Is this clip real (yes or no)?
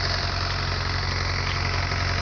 yes